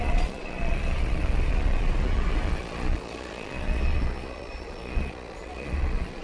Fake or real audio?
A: fake